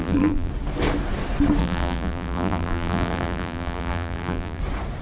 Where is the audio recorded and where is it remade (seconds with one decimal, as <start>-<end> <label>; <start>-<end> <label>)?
0.0-0.5 remade; 0.5-1.6 recorded; 1.6-4.6 remade; 4.6-5.0 recorded